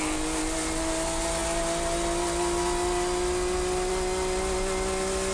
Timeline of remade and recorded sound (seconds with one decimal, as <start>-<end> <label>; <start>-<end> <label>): 0.0-5.3 recorded